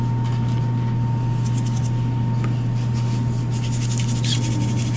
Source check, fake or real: real